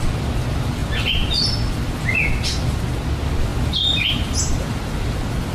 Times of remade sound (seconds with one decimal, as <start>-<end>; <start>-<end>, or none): none